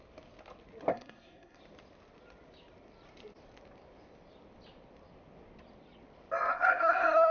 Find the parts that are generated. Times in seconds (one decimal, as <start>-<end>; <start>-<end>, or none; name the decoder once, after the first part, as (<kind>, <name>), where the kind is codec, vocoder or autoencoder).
0.9-1.6 (codec, SNAC); 6.5-7.3